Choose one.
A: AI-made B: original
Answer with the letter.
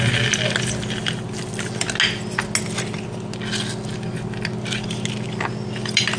B